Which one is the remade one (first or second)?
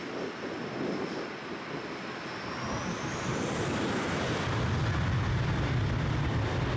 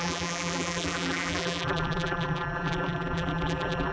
second